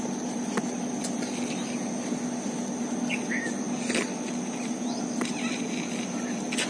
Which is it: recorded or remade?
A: recorded